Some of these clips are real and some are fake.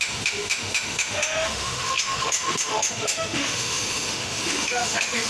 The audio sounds fake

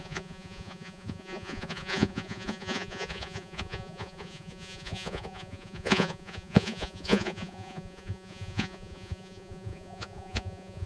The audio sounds fake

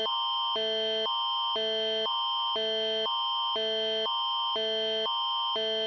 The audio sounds real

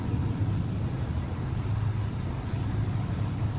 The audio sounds real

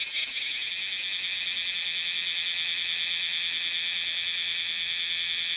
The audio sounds real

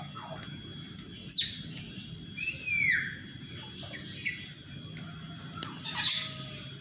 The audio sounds real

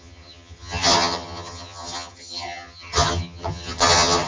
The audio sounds fake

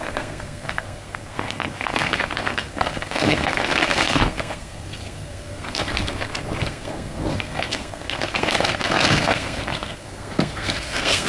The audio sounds fake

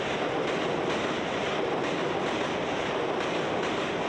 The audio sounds real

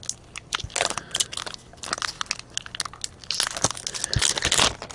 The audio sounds real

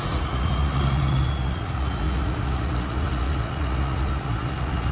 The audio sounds fake